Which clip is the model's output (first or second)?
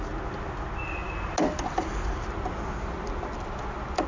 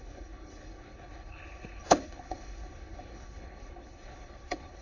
second